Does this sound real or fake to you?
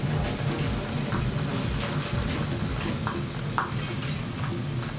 real